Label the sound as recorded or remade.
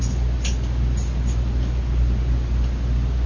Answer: recorded